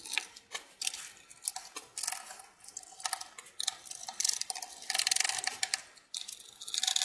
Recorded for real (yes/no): yes